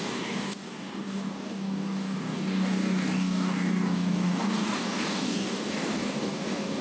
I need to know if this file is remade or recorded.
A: remade